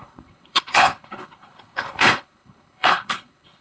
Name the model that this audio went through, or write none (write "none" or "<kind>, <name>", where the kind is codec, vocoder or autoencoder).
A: codec, HILCodec